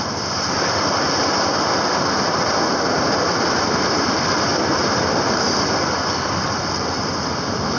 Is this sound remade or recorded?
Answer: recorded